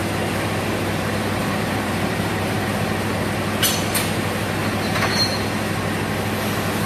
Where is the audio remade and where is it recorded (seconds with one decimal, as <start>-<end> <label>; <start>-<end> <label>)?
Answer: 0.0-1.4 recorded; 1.4-2.7 remade; 2.7-4.6 recorded; 4.6-5.3 remade; 5.3-6.9 recorded